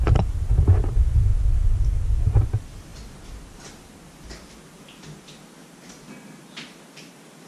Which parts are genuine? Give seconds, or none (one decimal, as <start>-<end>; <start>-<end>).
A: 0.0-7.5